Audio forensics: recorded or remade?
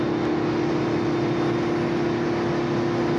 recorded